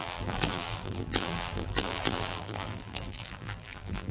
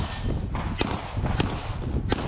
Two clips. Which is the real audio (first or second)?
second